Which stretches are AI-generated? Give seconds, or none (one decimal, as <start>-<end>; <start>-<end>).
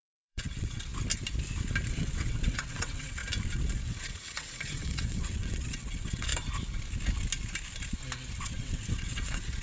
0.0-0.9; 1.9-3.2; 3.8-6.3; 8.4-9.6